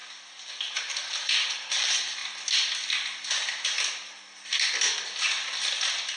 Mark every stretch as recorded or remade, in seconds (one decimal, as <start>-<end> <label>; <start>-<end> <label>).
0.0-0.8 recorded; 0.8-2.2 remade; 2.2-6.2 recorded